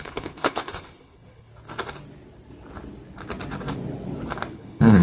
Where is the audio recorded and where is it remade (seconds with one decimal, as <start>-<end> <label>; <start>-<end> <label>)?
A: 0.0-1.5 remade; 1.5-4.5 recorded; 4.5-5.0 remade